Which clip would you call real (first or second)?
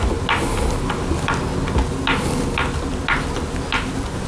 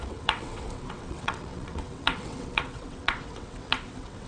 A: first